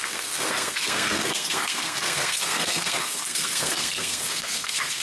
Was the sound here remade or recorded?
remade